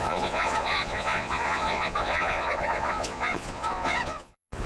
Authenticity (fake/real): fake